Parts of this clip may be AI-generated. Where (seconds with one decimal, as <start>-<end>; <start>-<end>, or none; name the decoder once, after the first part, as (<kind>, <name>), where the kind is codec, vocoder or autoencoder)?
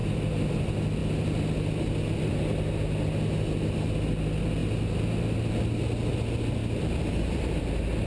0.0-0.6 (vocoder, BigVGAN v2); 6.6-7.6